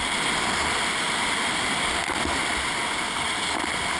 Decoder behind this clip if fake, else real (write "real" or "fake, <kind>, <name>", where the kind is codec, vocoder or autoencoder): real